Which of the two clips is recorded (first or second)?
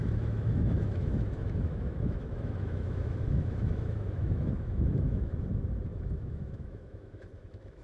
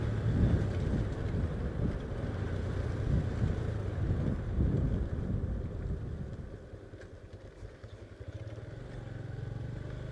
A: second